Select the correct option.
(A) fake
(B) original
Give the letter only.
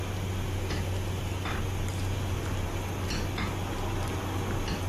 B